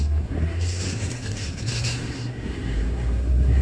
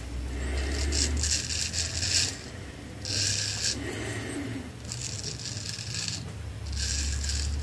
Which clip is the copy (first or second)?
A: first